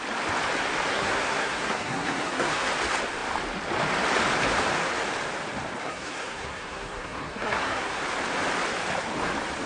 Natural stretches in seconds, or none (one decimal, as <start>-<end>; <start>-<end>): 0.0-0.9; 2.7-5.8; 8.0-9.7